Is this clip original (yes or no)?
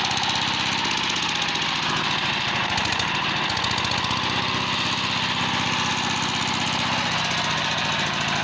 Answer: yes